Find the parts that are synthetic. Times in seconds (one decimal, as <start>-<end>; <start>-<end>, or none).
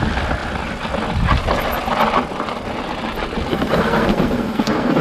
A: 3.5-5.0